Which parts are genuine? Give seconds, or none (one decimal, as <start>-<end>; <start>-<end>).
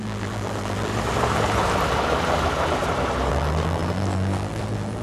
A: 0.9-3.3